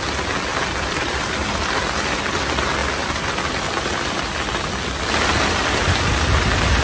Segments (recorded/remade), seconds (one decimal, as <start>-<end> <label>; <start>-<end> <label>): 0.0-0.5 recorded; 0.5-1.8 remade; 1.8-2.8 recorded; 2.8-4.4 remade; 4.4-6.8 recorded